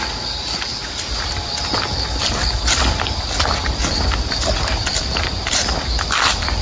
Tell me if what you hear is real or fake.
fake